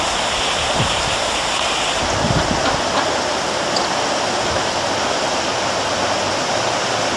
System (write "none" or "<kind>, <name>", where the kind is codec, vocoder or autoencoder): none